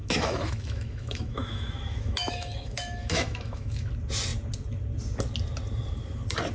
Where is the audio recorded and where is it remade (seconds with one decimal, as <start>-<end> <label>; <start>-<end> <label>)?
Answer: 0.0-3.9 remade; 3.9-6.5 recorded